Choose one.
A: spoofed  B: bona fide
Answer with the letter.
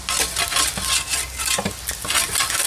B